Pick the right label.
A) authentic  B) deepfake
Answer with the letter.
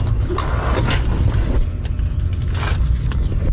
A